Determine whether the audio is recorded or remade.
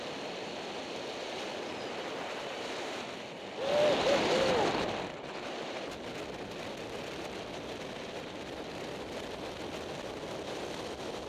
recorded